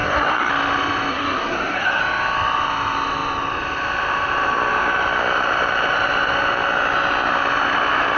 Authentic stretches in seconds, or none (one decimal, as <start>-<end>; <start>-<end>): 0.5-1.1; 2.0-8.2